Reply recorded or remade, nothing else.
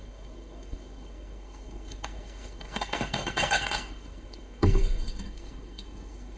remade